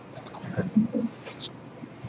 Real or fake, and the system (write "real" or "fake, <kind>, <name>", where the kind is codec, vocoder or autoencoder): real